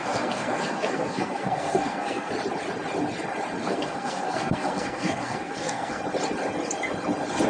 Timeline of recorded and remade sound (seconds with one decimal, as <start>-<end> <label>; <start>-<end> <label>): 0.0-2.3 remade; 2.3-3.6 recorded; 3.6-6.0 remade; 6.0-7.5 recorded